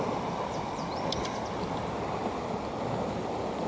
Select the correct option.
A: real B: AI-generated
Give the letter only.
A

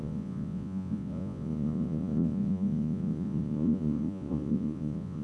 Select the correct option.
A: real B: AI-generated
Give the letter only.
B